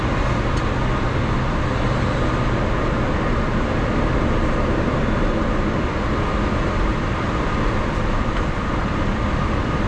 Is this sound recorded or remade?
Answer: recorded